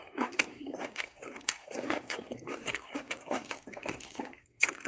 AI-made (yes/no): yes